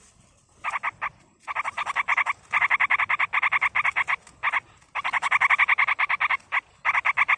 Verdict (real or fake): real